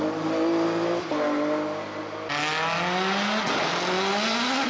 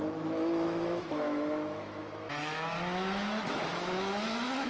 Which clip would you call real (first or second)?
first